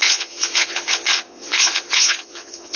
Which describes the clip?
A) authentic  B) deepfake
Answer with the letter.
B